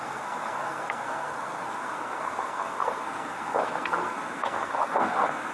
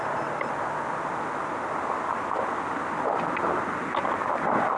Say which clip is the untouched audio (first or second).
second